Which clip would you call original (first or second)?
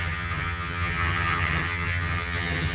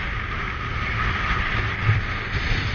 second